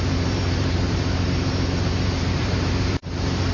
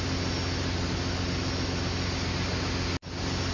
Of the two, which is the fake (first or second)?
first